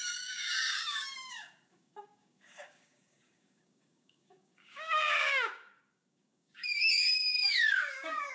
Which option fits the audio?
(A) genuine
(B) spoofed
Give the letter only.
B